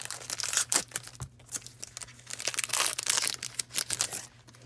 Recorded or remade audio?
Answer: recorded